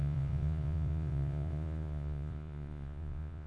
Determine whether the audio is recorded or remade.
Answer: remade